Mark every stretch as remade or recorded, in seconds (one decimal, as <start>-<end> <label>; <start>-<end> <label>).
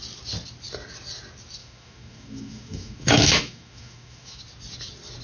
0.0-1.6 recorded; 1.6-4.4 remade; 4.4-5.2 recorded